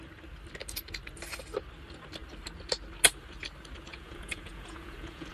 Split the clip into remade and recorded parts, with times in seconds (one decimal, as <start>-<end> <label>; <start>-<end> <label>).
0.0-3.9 recorded; 3.9-5.3 remade